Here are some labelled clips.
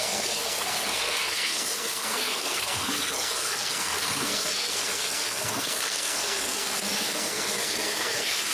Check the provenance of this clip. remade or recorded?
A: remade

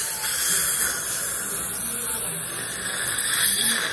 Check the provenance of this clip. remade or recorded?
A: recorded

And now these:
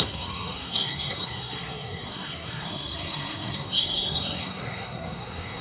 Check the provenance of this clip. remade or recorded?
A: remade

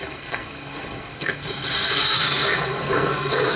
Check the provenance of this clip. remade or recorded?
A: remade